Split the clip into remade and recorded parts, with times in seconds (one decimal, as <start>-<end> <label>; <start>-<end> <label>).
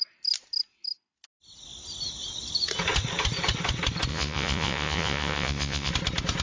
0.0-4.1 recorded; 4.1-5.9 remade; 5.9-6.4 recorded